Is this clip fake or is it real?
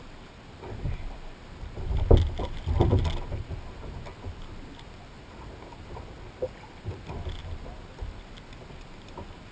real